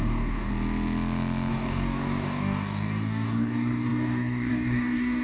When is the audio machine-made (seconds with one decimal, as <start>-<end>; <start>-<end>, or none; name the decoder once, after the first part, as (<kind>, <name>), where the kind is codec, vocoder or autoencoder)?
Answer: 0.0-0.5 (codec, DAC); 1.5-5.2